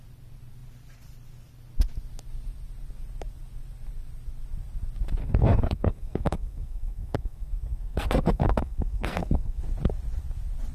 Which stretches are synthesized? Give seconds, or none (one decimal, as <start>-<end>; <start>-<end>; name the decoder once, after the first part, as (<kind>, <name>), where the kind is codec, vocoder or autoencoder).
5.2-9.6 (codec, SNAC)